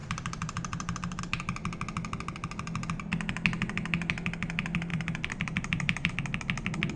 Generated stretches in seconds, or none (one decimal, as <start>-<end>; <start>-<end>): 0.0-1.2; 4.9-6.1

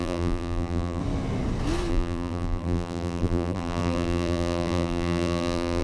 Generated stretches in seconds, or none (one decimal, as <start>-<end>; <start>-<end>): 0.0-1.0; 1.9-5.8

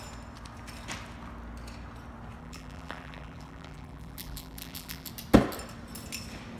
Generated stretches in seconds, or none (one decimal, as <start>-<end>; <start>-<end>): 2.4-5.1

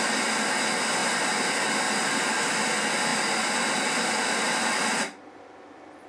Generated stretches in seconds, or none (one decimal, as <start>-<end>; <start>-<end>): none

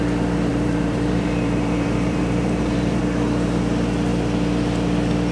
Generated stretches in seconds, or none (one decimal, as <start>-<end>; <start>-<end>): 0.5-3.0

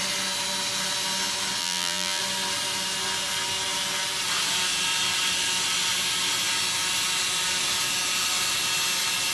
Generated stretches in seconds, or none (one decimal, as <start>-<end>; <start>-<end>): 1.6-2.2

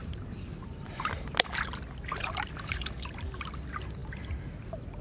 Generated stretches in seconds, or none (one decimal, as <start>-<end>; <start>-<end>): none